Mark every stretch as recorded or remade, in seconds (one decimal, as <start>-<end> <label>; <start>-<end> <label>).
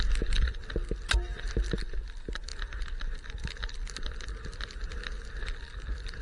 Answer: 0.0-6.2 recorded